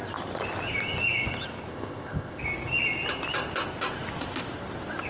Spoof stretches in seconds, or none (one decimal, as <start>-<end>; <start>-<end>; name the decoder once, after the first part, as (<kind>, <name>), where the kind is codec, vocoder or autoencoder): 1.7-2.4 (codec, ZipCodec)